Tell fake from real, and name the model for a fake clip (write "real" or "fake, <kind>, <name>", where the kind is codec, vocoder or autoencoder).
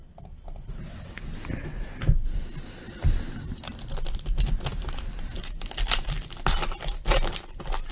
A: real